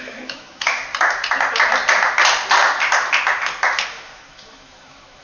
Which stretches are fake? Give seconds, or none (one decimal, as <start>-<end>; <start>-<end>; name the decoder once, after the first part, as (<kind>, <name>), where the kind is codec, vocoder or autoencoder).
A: 0.0-0.8 (autoencoder, DAC-VAE); 3.9-5.2